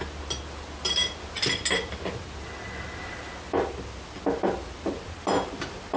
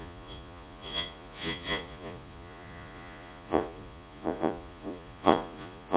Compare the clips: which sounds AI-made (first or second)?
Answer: second